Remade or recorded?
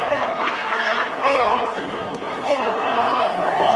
remade